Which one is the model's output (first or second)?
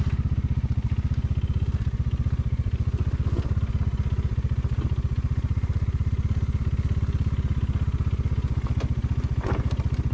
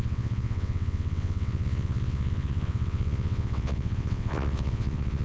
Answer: second